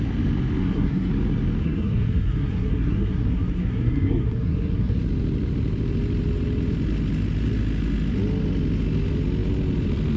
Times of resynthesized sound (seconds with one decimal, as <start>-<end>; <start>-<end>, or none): 0.6-1.1; 1.6-5.0